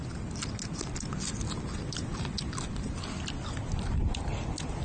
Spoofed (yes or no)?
no